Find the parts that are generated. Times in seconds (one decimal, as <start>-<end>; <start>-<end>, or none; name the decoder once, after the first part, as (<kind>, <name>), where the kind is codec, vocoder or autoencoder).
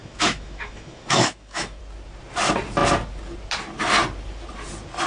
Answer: 0.0-1.8 (autoencoder, DAC-VAE)